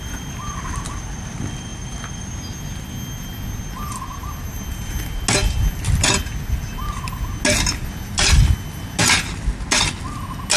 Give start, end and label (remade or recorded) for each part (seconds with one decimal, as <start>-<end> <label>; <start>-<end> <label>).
0.0-10.6 recorded